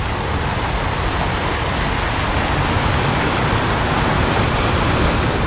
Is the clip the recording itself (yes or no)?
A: yes